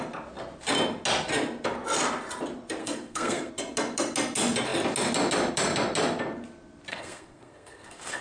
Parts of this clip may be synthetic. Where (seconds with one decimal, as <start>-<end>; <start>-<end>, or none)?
2.8-3.5; 6.9-8.2